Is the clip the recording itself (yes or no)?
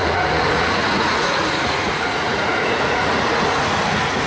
no